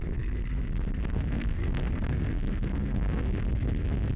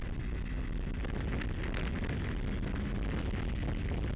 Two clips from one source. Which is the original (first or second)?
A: second